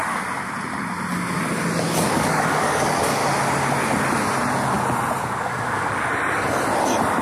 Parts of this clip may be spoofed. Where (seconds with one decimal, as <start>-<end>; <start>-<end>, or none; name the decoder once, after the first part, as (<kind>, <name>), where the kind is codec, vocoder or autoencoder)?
2.0-3.2 (codec, DAC); 5.2-6.1